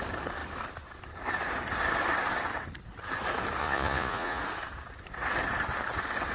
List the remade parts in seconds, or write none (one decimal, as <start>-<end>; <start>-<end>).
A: 3.6-4.4